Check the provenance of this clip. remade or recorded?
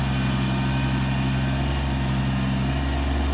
recorded